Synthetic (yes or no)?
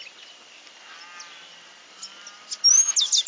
no